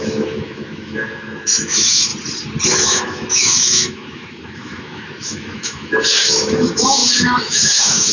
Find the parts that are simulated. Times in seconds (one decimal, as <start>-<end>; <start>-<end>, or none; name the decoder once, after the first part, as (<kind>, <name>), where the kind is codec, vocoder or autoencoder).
0.0-2.1 (autoencoder, DAC-VAE); 2.7-8.1